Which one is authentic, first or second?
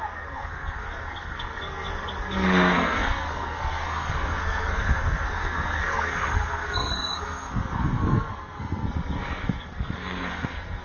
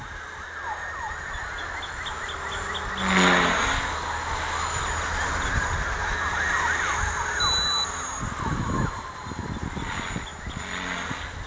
second